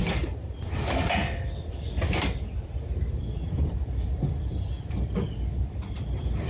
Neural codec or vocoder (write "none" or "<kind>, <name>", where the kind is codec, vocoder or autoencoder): none